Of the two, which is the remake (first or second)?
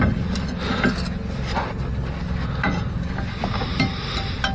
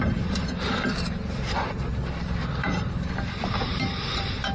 second